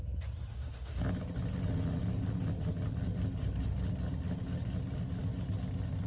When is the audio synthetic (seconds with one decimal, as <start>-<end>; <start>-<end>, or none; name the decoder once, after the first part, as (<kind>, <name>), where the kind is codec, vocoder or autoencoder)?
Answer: 0.5-1.0 (autoencoder, DAC-VAE)